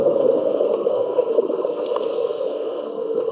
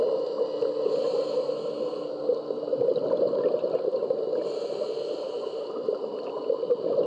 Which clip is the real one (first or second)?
second